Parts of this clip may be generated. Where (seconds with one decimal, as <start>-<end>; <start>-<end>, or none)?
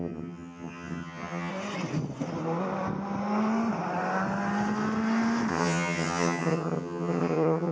0.0-1.5; 5.5-7.7